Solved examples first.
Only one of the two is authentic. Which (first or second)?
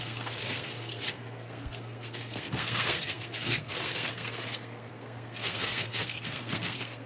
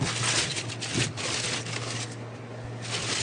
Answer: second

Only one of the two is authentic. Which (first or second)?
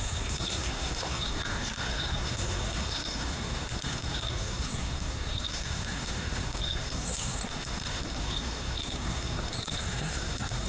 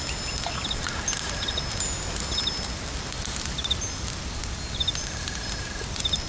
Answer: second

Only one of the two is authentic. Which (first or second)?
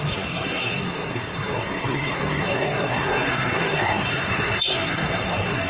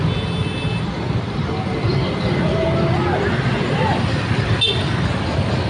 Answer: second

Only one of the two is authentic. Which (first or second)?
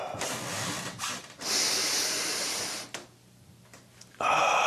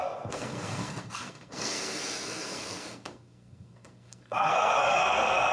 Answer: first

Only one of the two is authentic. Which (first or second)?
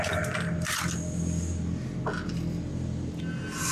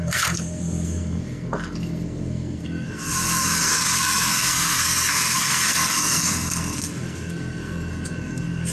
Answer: first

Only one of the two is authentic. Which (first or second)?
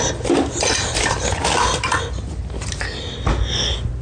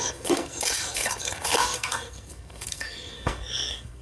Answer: first